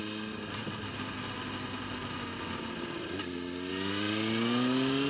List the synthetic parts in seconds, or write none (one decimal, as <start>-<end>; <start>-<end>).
none